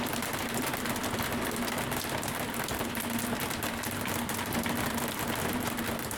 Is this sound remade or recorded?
recorded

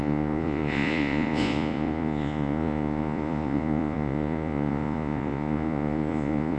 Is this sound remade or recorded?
remade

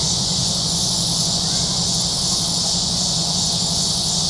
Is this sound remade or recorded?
remade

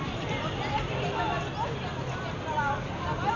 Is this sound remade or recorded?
recorded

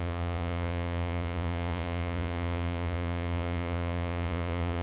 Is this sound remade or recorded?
remade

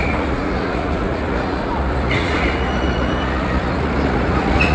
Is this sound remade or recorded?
remade